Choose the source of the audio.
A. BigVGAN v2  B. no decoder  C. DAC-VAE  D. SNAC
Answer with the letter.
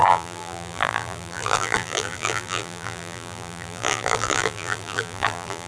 A